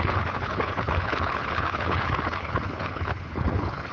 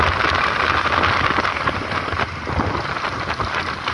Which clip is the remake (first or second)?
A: first